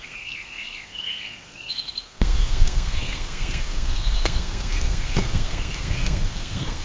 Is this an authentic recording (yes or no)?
no